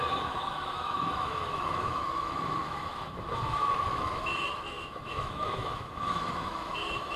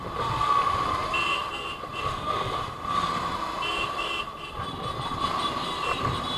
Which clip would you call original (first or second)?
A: second